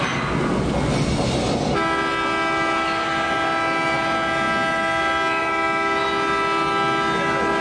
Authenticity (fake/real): real